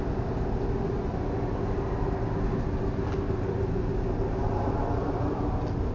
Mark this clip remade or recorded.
recorded